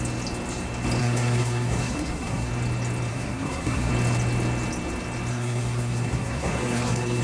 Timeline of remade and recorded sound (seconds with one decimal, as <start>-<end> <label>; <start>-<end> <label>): 0.0-1.0 recorded; 1.0-2.5 remade; 2.5-3.1 recorded; 3.1-3.9 remade; 3.9-5.3 recorded; 5.3-7.2 remade